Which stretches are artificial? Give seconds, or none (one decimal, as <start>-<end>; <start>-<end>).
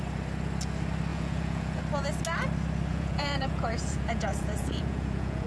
1.1-1.8; 2.9-5.5